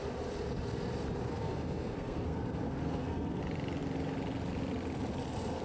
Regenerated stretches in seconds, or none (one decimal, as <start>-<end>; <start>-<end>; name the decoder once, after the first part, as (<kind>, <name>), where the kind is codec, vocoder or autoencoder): 1.3-3.4 (codec, SNAC)